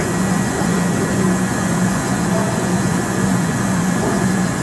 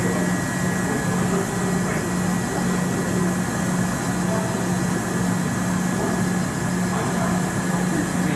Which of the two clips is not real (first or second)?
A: first